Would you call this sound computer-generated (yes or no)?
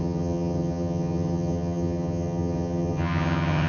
yes